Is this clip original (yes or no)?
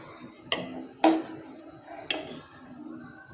yes